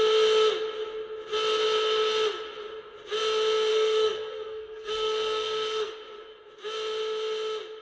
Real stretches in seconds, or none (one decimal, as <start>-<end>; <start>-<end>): 0.0-3.7; 5.9-7.8